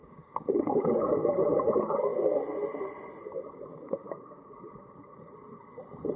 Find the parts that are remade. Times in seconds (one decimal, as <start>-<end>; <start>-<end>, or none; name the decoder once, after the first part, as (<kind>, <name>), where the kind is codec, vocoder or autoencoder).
0.0-1.3 (codec, DAC); 3.7-4.7